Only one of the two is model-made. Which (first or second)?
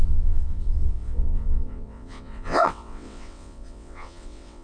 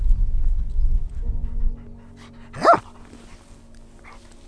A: first